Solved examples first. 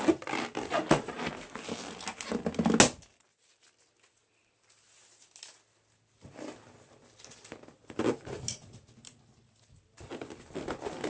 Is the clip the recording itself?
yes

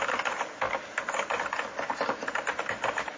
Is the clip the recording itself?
yes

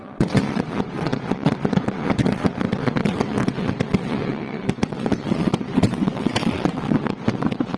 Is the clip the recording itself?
no